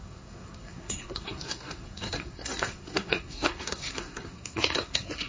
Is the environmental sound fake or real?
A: fake